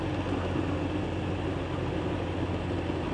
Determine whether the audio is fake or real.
real